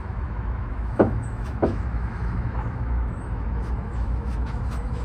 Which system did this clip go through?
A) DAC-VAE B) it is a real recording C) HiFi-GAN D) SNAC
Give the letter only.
A